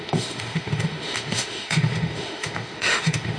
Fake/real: fake